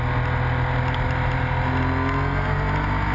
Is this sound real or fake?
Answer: real